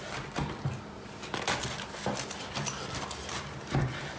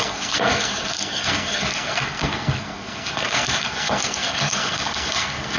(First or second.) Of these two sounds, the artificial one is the second